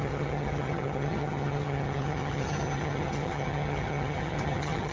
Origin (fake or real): fake